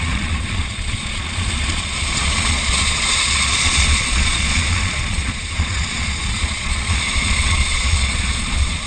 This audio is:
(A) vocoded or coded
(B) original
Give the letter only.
A